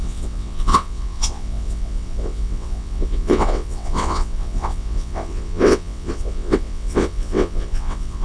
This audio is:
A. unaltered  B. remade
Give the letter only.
B